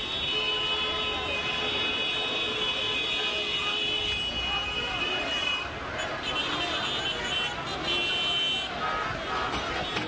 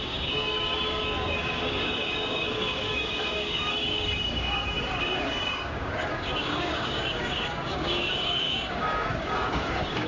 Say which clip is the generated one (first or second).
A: second